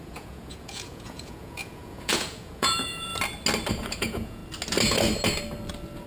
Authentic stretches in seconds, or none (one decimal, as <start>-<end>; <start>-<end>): 3.1-3.7; 4.4-6.1